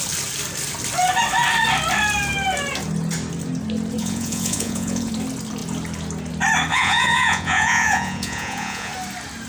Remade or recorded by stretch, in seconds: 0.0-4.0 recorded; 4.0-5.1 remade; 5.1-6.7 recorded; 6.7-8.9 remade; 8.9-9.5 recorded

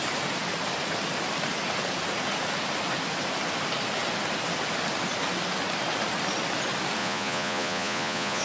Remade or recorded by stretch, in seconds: 0.0-7.0 recorded; 7.0-8.4 remade